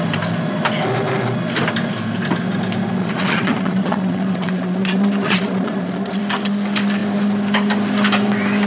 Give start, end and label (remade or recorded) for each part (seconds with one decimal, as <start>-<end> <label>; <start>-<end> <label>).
0.0-3.0 recorded; 3.0-6.2 remade; 6.2-8.7 recorded